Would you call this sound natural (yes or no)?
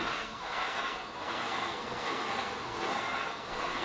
no